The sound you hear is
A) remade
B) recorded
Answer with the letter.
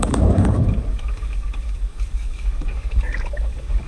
A